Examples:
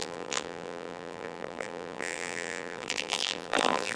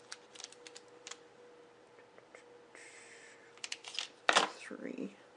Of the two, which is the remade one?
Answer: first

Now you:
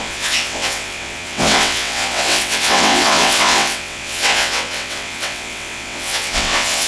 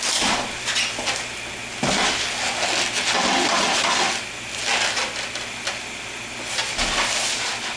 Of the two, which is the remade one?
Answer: first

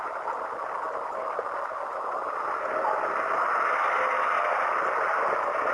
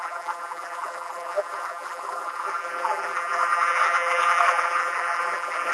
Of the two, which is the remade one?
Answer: second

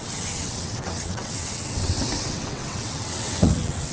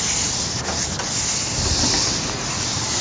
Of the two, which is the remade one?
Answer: first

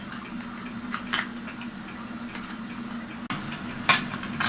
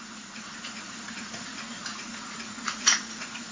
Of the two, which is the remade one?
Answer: second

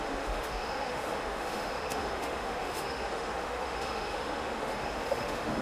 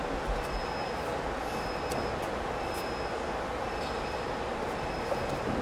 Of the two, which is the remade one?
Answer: first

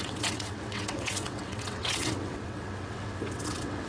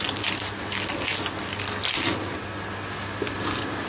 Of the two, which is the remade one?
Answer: first